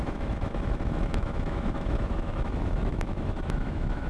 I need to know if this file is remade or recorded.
remade